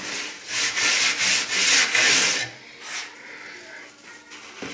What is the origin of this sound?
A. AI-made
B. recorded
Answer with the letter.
B